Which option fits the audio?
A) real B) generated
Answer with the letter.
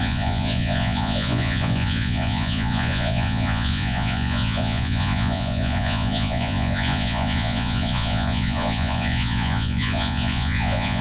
B